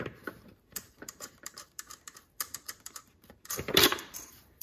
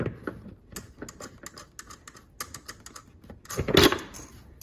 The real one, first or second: second